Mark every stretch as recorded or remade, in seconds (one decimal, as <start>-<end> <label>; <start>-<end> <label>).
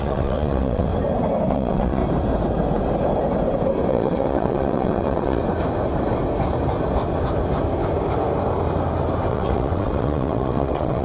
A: 0.0-0.9 remade; 0.9-1.5 recorded; 1.5-2.0 remade; 2.0-3.9 recorded; 3.9-5.4 remade; 5.4-9.3 recorded; 9.3-11.0 remade